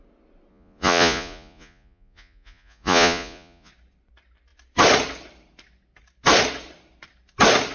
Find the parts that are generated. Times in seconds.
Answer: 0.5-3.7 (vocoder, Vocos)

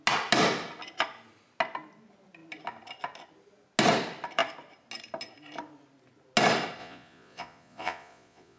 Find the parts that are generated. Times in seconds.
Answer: 6.8-8.6 (vocoder, Vocos)

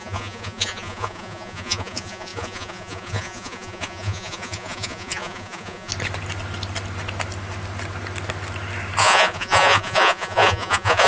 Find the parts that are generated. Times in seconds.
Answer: 0.0-5.9 (vocoder, Vocos); 9.0-11.1

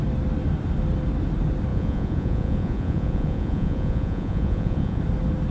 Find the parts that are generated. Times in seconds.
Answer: 1.7-5.0 (vocoder, Vocos)